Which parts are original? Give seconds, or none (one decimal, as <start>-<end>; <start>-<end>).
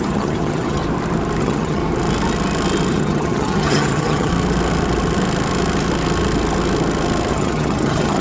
0.8-1.4; 1.8-2.9; 4.3-7.3